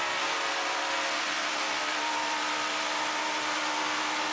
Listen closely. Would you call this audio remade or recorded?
recorded